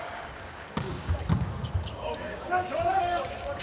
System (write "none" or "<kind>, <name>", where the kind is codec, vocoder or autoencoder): codec, DAC